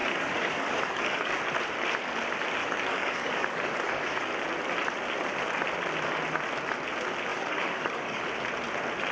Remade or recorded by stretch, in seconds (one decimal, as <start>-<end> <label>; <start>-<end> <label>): 0.0-1.4 remade; 1.4-2.6 recorded; 2.6-4.3 remade; 4.3-7.3 recorded; 7.3-8.2 remade; 8.2-9.1 recorded